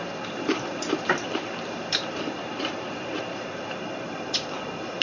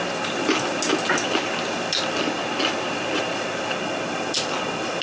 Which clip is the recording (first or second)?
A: second